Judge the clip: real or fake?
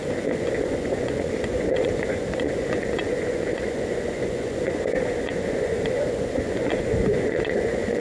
fake